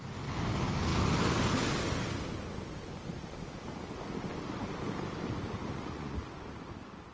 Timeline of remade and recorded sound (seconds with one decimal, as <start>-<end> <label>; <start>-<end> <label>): 0.0-5.6 recorded; 5.6-6.3 remade; 6.3-7.1 recorded